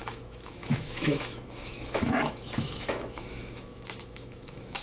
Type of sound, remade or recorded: remade